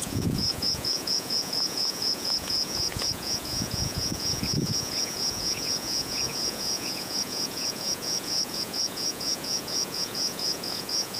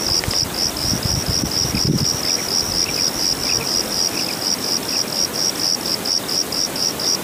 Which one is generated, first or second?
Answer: first